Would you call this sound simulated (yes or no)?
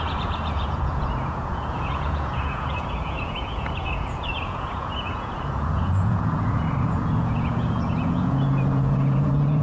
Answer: yes